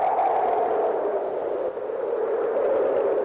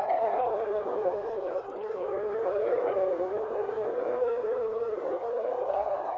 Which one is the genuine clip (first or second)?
first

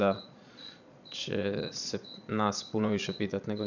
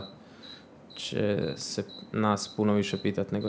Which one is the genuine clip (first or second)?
second